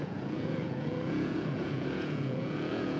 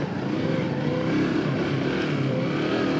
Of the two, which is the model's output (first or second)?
first